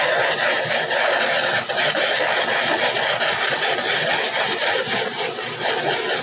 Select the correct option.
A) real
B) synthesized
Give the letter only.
A